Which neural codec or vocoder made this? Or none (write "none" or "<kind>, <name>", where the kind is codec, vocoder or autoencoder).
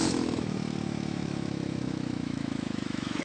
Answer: autoencoder, DAC-VAE